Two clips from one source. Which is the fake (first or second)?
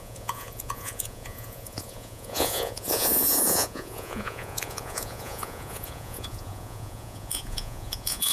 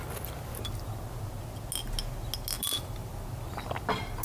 first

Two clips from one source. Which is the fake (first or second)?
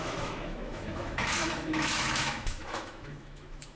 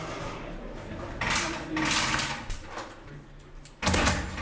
first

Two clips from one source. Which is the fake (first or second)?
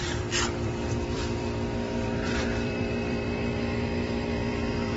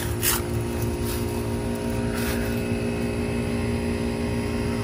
first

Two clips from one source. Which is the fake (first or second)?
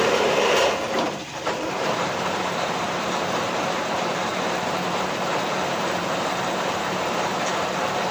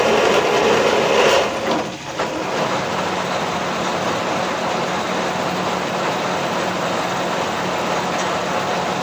first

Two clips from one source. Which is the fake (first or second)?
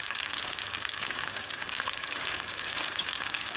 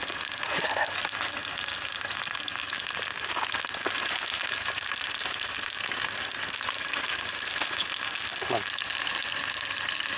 first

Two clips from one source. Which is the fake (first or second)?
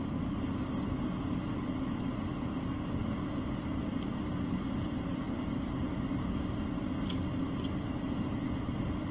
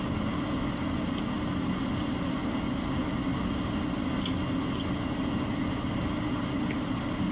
first